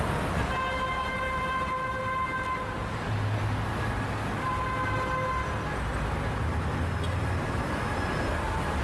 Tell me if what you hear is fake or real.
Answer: real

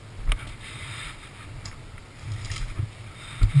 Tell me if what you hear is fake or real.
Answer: real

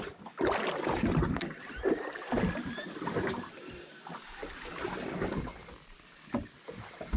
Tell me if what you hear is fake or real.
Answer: real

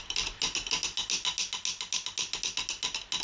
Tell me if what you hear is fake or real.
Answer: real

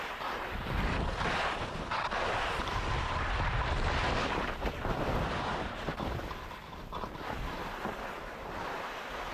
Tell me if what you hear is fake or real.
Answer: real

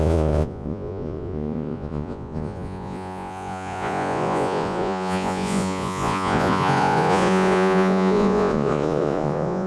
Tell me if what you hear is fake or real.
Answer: fake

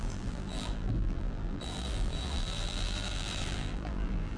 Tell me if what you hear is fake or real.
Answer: fake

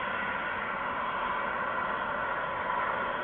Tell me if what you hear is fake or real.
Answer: real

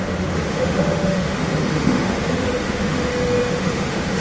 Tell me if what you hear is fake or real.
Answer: fake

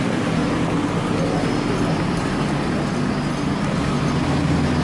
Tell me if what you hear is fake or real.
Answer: real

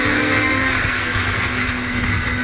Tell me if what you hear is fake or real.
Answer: fake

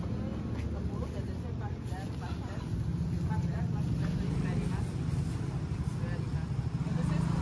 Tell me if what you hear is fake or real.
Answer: real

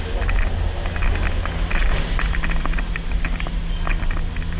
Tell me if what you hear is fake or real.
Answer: real